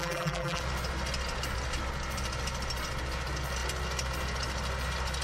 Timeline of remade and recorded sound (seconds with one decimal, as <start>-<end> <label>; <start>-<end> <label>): 0.0-0.6 remade; 0.6-5.2 recorded